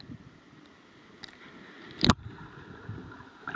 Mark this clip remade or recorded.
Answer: recorded